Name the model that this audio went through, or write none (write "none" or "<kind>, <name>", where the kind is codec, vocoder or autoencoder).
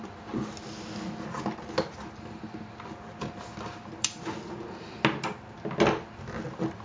none